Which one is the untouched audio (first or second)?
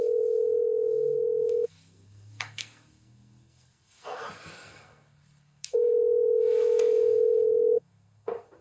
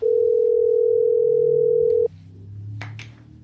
second